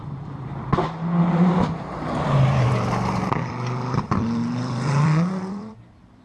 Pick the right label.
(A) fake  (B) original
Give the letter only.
A